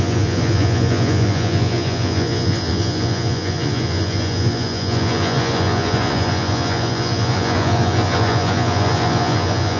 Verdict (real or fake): fake